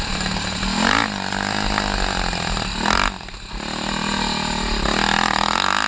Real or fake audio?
real